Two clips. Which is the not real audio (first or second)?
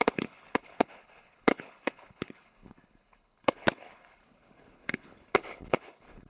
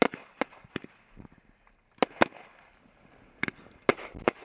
first